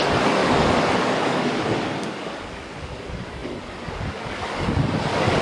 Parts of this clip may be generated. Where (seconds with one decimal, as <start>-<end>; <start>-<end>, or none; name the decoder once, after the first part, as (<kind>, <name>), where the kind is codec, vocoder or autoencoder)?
0.0-5.4 (codec, DAC)